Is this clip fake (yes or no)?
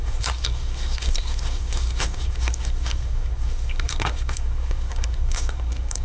yes